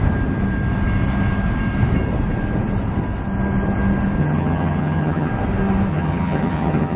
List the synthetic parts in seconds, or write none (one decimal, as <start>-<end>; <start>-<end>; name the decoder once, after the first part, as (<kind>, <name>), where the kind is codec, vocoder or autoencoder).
4.2-5.3 (vocoder, HiFi-GAN); 5.9-7.0